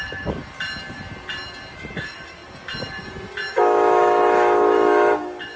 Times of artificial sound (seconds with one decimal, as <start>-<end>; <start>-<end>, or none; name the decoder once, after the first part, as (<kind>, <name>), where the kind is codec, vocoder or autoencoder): 0.0-0.4 (autoencoder, DAC-VAE); 1.7-2.4; 3.5-5.6